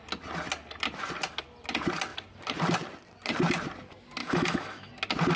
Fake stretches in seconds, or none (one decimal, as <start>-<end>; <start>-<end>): 4.2-4.9